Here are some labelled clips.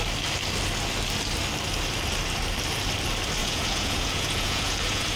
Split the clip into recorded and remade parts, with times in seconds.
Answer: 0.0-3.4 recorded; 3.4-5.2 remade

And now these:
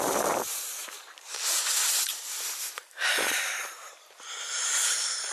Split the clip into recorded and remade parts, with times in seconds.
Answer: 0.0-5.3 remade

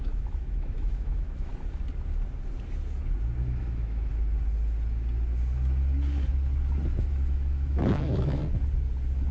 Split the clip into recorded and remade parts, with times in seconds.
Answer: 0.0-1.5 remade; 1.5-3.6 recorded; 3.6-4.1 remade; 4.1-7.0 recorded; 7.0-8.4 remade; 8.4-9.3 recorded

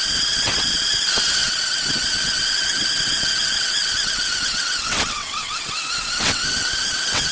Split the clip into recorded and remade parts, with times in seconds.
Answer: 0.0-7.3 remade

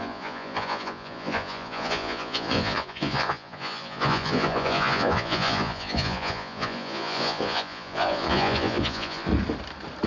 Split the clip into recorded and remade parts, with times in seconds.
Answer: 0.0-9.3 remade; 9.3-10.1 recorded